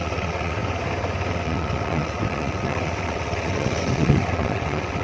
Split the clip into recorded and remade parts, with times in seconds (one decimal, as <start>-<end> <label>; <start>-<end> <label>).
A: 0.0-0.6 remade; 0.6-1.3 recorded; 1.3-5.0 remade